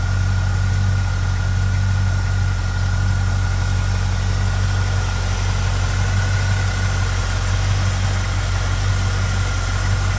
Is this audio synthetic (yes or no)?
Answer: no